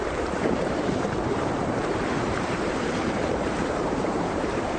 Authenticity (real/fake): fake